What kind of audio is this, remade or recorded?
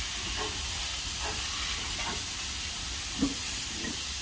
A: remade